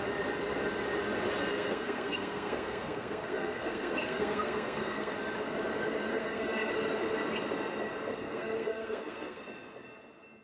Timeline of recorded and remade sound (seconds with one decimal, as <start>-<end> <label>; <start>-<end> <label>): 0.0-1.5 recorded; 1.5-5.1 remade; 5.1-6.1 recorded; 6.1-6.7 remade; 6.7-8.2 recorded; 8.2-9.4 remade; 9.4-10.4 recorded

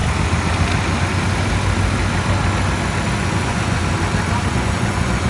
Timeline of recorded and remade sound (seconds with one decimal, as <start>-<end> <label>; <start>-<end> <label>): 0.0-3.2 recorded; 3.2-3.8 remade; 3.8-4.5 recorded; 4.5-5.3 remade

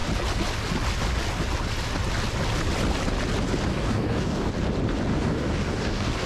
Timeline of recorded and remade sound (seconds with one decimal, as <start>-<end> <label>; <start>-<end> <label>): 0.0-3.7 recorded; 3.7-4.5 remade; 4.5-5.1 recorded; 5.1-6.3 remade

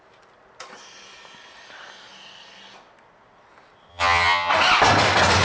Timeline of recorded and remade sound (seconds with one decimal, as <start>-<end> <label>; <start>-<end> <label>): 0.0-3.9 recorded; 3.9-4.5 remade; 4.5-5.4 recorded